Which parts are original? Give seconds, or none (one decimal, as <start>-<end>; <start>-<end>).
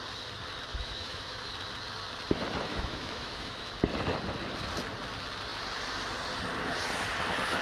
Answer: 0.0-0.7; 1.5-2.7; 3.7-7.6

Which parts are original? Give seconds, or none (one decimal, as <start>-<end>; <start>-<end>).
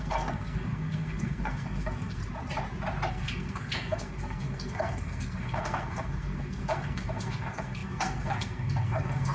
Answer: 2.2-3.1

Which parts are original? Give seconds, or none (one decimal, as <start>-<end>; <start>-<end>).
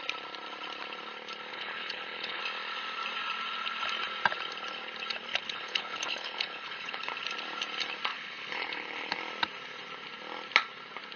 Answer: 0.0-1.5; 2.4-5.3; 7.1-8.1; 9.2-11.2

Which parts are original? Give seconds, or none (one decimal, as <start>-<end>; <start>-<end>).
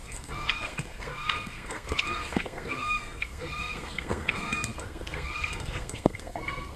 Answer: none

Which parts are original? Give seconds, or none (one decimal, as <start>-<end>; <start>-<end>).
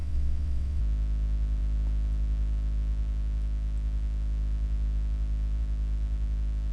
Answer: 0.8-6.7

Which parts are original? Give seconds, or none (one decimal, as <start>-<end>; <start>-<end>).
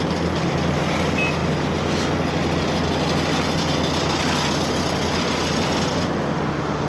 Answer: 0.0-6.9